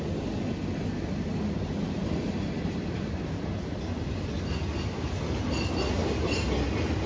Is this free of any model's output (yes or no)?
yes